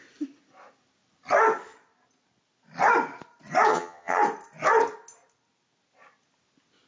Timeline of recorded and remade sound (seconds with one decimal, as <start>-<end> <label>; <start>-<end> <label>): 0.0-3.7 recorded; 3.7-4.2 remade; 4.2-6.9 recorded